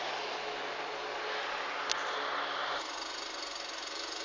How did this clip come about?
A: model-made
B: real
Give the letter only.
B